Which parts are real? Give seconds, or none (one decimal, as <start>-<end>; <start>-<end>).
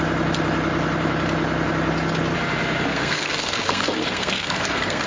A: 0.0-2.9